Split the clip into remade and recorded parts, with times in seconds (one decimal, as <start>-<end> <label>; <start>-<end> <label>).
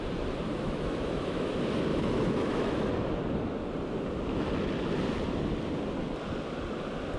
0.0-0.5 recorded; 0.5-1.5 remade; 1.5-1.9 recorded; 1.9-2.9 remade; 2.9-7.2 recorded